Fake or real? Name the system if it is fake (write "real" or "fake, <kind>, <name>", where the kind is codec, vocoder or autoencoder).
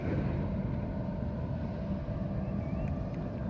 real